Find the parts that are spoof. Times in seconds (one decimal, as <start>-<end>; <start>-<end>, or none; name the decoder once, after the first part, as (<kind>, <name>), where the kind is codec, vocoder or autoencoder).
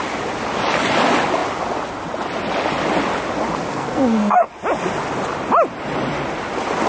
3.7-4.5 (codec, SNAC)